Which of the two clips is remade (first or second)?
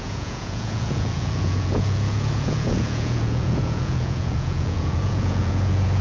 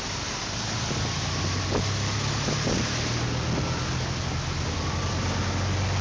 first